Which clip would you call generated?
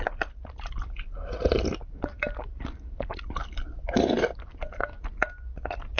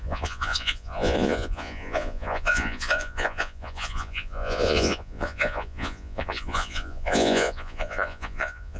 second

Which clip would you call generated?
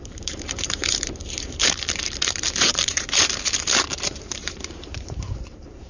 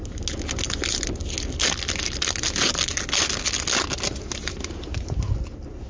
first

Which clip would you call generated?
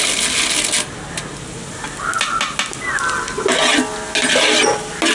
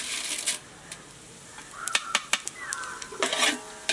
second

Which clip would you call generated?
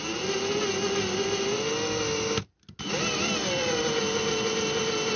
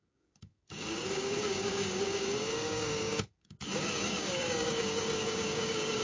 second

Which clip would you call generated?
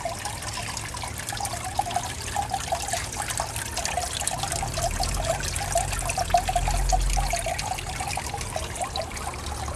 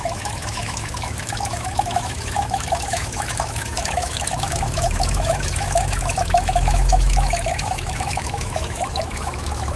second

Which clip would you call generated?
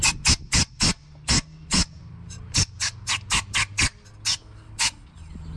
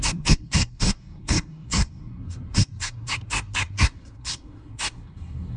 second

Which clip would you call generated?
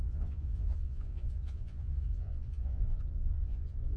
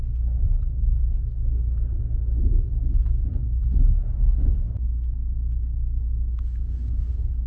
first